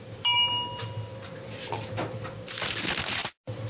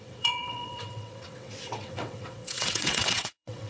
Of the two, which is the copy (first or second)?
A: second